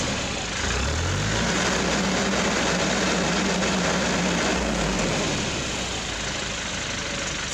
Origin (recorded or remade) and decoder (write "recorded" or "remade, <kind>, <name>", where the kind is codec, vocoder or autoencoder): recorded